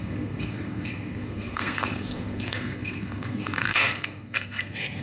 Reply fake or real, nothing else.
fake